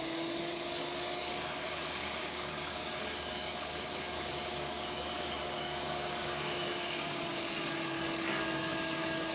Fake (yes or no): yes